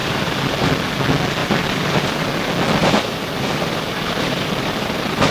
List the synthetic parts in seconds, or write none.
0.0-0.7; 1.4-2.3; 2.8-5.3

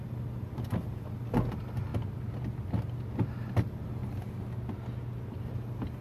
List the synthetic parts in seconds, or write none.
0.0-1.9; 3.3-4.0; 5.3-6.0

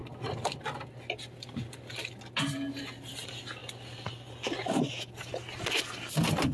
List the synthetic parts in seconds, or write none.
none

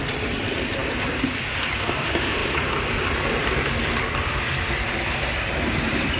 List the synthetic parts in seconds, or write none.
0.0-6.2

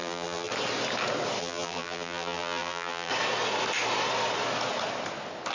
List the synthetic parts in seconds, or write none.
0.0-0.5; 1.4-3.1

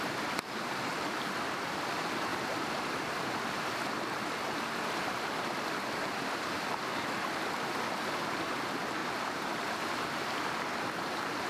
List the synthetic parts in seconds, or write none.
2.3-3.2; 5.1-6.7; 9.0-9.8

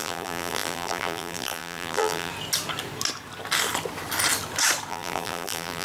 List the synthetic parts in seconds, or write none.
0.0-2.3; 4.9-5.8

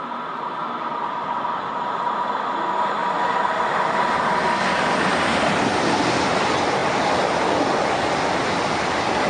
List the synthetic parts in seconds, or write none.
0.6-1.3; 3.0-4.2; 6.8-8.1